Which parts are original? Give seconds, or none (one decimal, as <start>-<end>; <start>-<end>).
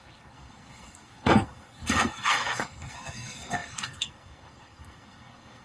none